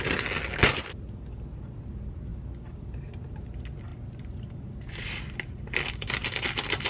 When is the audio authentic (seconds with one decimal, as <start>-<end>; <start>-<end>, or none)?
0.0-3.9; 5.3-6.9